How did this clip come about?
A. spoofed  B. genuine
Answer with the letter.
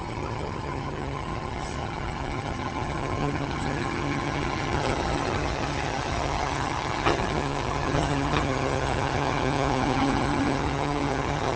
A